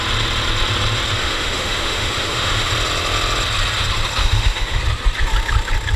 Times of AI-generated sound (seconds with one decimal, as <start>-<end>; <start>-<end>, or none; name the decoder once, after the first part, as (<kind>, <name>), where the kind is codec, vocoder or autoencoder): 1.2-2.7 (autoencoder, DAC-VAE); 4.2-4.8